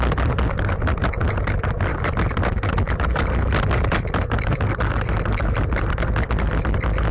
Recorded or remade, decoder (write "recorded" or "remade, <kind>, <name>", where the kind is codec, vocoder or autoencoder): recorded